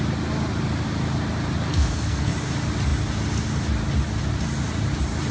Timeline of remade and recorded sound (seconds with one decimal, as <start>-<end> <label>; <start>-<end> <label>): 0.0-1.7 recorded; 1.7-2.3 remade; 2.3-5.3 recorded